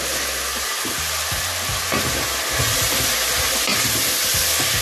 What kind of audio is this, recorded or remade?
recorded